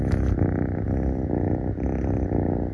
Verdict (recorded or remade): recorded